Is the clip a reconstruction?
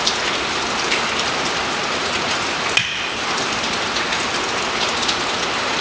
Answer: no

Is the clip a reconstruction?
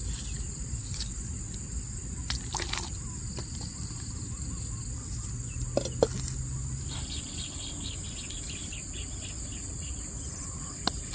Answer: no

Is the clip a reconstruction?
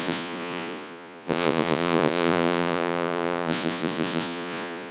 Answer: yes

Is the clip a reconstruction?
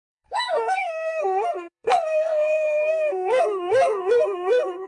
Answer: yes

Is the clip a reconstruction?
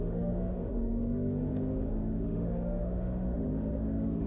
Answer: yes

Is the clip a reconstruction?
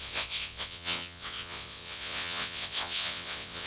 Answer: yes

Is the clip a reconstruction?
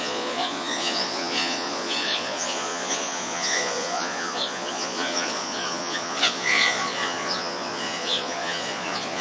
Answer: yes